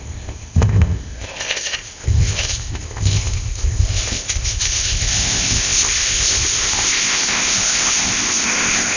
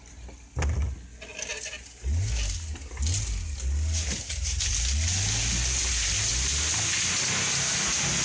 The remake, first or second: first